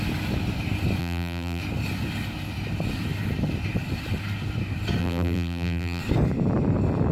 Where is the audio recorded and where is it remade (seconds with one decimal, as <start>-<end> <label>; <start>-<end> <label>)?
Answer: 0.0-1.0 recorded; 1.0-1.6 remade; 1.6-5.0 recorded; 5.0-6.0 remade; 6.0-7.1 recorded